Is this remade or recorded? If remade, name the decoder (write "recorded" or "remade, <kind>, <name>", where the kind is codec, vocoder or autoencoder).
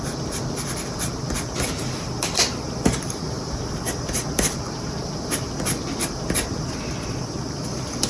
remade, vocoder, BigVGAN v2